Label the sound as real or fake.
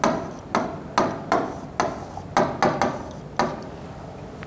real